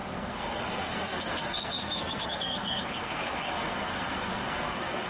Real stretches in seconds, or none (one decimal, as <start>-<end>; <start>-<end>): none